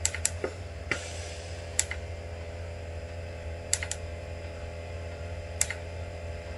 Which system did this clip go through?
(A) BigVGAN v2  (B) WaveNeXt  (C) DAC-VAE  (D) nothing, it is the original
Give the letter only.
A